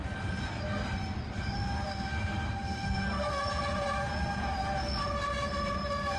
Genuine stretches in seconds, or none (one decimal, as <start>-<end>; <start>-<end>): 0.0-1.9; 3.4-6.2